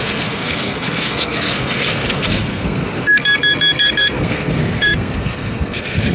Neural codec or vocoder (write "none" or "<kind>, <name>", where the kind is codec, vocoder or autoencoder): codec, SNAC